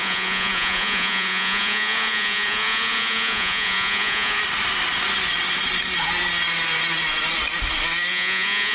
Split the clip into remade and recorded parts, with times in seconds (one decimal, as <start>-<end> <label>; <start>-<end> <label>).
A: 0.0-4.4 remade; 4.4-8.1 recorded; 8.1-8.7 remade